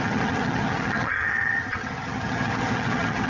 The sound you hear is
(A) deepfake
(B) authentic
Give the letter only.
A